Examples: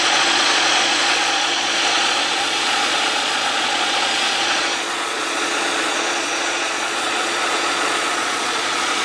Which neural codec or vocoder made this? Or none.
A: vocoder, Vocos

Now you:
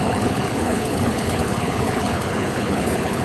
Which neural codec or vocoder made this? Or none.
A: codec, HILCodec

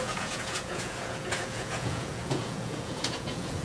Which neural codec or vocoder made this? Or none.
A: vocoder, Vocos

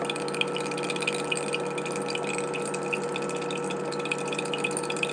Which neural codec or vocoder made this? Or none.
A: none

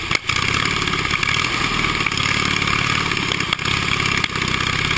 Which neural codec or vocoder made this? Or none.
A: none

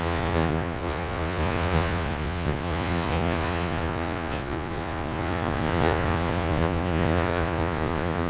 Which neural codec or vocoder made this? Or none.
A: vocoder, Vocos